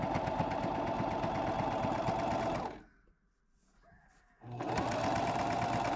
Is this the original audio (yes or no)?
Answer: yes